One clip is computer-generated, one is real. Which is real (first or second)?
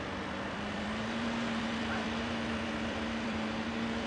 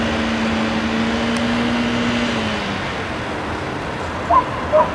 second